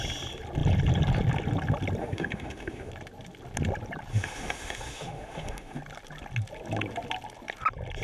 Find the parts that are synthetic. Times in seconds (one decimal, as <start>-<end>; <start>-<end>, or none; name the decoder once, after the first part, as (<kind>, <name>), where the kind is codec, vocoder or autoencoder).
2.0-2.9 (autoencoder, DAC-VAE); 4.1-5.8